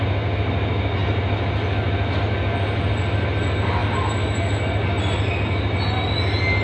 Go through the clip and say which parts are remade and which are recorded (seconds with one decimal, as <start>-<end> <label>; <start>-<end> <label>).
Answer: 0.0-6.6 recorded